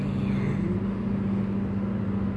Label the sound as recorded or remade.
recorded